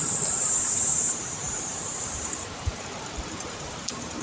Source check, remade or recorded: remade